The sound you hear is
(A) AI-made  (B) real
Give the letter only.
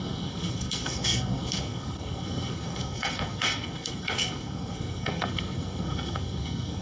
A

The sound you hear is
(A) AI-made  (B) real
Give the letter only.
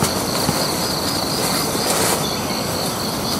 B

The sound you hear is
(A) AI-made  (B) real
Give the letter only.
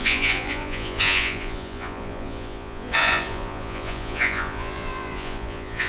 A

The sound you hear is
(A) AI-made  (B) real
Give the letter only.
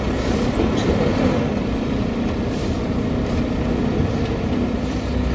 B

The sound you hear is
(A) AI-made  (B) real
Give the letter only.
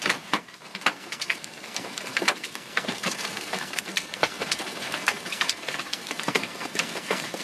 A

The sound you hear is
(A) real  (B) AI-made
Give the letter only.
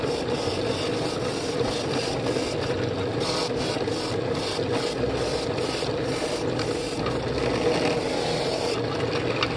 A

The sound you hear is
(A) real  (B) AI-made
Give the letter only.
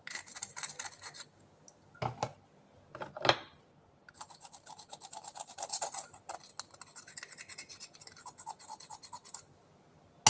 A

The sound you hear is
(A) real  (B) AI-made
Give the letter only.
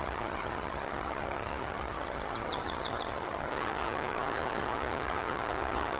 B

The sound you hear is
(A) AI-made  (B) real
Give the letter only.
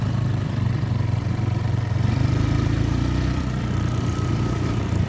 A